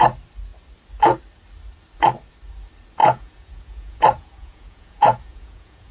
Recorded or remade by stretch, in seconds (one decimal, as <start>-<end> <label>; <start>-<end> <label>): 0.0-3.0 recorded; 3.0-5.9 remade